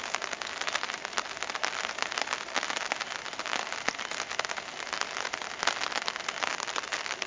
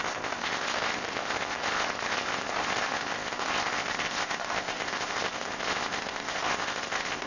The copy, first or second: second